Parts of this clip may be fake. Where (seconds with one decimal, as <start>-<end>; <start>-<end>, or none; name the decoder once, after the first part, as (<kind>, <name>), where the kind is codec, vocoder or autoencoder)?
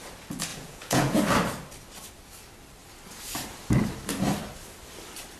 0.5-1.2 (vocoder, Vocos)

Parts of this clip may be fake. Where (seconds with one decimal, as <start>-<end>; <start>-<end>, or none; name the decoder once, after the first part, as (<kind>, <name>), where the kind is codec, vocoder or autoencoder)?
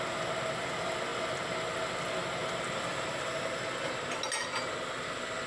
none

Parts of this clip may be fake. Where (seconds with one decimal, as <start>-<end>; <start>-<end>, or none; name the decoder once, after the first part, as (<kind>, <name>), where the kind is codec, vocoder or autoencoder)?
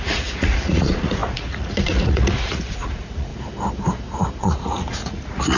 0.0-3.3 (vocoder, Vocos); 4.4-5.6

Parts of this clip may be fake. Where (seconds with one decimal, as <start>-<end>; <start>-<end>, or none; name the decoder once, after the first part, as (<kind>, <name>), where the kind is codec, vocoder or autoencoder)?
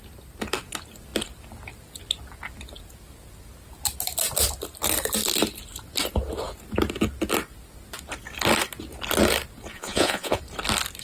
9.7-10.4 (vocoder, Vocos)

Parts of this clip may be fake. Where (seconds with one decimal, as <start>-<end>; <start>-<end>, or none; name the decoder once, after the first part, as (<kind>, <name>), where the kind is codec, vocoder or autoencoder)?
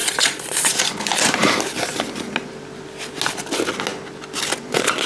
0.0-0.7 (vocoder, Vocos)